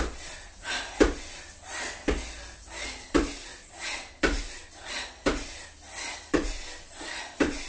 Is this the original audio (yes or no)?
yes